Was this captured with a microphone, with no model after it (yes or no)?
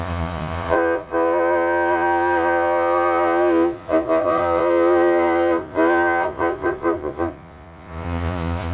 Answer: no